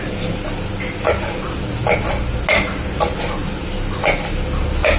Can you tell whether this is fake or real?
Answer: real